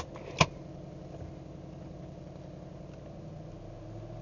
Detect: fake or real real